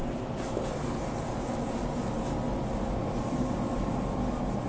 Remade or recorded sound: recorded